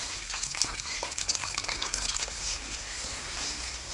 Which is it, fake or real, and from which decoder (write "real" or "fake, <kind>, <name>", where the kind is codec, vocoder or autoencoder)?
fake, codec, SNAC